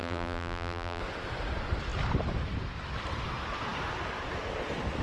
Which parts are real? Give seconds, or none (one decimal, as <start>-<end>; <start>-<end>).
1.0-5.0